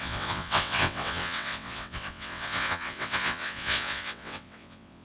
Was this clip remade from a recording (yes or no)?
yes